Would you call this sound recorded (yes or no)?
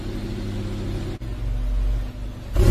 yes